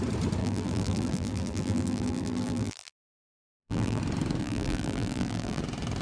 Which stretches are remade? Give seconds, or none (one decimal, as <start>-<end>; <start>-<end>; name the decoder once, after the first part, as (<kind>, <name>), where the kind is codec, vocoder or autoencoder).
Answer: 0.4-4.0 (vocoder, BigVGAN v2); 4.4-5.6